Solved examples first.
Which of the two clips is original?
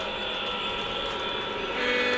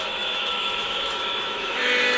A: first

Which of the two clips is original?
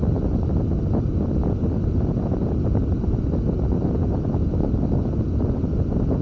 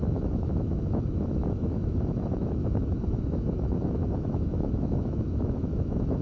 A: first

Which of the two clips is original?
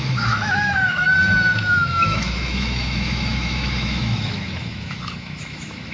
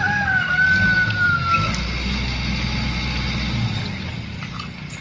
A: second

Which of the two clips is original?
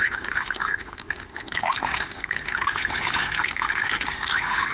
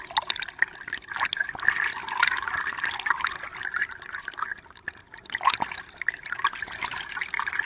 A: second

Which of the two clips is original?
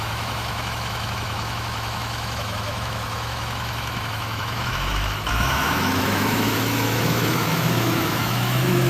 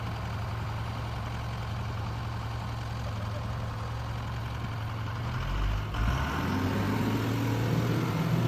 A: second